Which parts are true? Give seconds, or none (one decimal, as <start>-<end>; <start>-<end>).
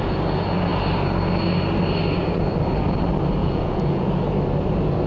0.0-3.4; 4.1-5.1